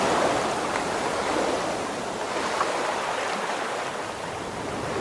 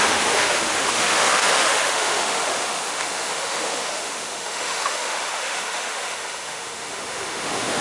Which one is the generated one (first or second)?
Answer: second